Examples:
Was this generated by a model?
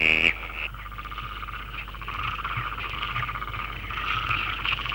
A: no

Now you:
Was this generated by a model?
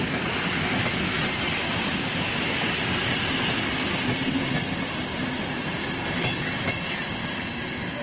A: no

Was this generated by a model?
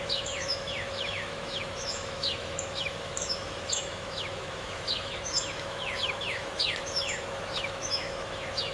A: yes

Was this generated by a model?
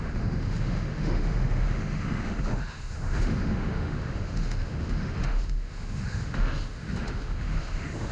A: yes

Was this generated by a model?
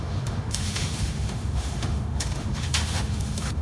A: yes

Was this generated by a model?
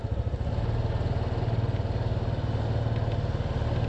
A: no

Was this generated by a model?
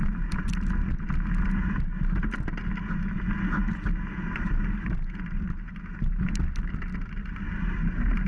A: no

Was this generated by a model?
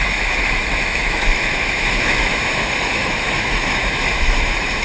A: yes